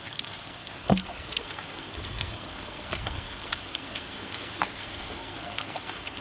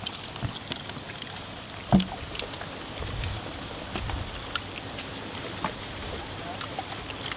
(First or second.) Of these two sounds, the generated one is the first